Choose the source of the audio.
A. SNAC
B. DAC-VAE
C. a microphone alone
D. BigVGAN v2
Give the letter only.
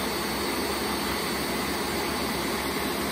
C